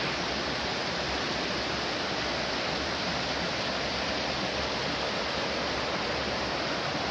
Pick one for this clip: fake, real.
real